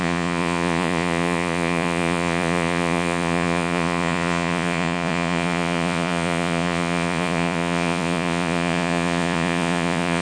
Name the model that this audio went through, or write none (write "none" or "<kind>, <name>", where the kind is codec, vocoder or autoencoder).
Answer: vocoder, Vocos